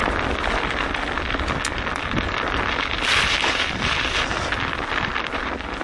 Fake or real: real